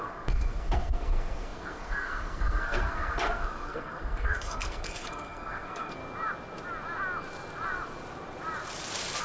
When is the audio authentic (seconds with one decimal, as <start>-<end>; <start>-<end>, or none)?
6.0-9.2